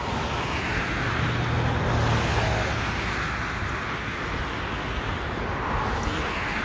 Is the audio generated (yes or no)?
no